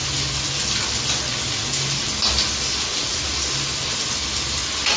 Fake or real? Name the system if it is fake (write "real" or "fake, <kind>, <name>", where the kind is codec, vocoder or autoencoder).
real